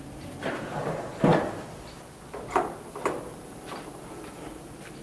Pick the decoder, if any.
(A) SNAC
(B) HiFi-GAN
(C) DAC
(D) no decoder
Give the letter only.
D